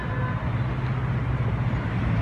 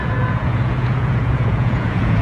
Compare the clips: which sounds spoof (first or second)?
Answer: second